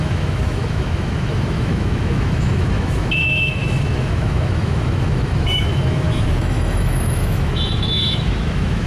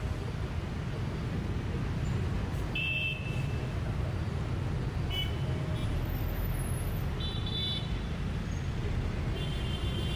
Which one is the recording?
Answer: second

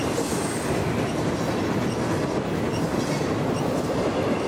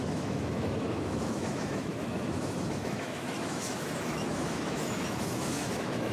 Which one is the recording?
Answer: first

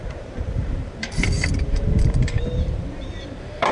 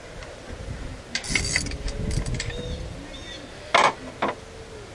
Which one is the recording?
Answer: second